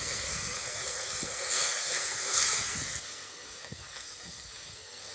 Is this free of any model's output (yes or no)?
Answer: no